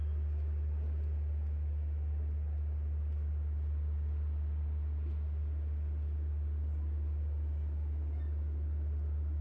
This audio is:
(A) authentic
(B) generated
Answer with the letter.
A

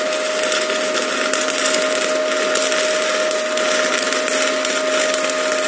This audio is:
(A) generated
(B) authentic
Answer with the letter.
B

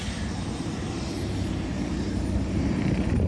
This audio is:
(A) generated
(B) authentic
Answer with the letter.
A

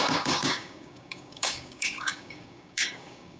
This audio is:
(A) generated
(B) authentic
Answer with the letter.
A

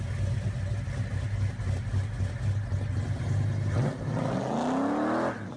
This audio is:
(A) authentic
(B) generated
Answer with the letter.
A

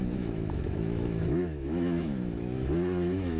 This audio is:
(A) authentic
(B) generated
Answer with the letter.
B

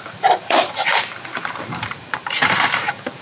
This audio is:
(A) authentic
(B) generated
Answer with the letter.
B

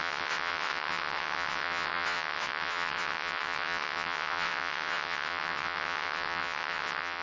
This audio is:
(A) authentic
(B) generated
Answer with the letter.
B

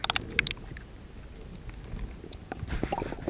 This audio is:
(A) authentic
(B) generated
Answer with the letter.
A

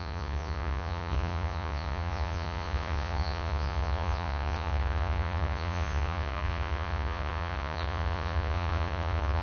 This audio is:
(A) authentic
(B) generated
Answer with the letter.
B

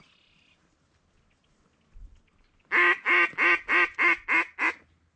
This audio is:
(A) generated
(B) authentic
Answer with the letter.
B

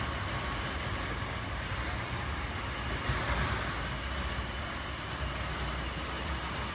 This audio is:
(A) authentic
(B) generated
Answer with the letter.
A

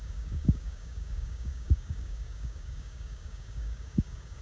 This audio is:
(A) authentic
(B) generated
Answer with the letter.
B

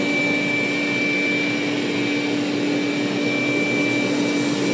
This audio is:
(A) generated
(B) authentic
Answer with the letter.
B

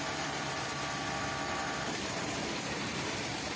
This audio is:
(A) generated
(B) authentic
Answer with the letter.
A